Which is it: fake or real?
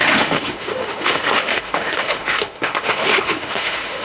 fake